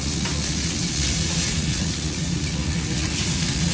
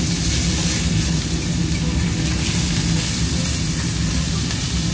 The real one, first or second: second